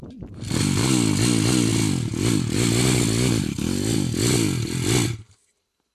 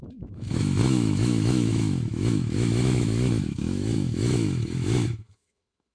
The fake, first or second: second